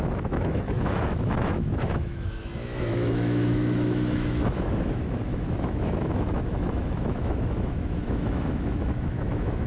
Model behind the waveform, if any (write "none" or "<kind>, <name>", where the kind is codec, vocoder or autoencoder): autoencoder, DAC-VAE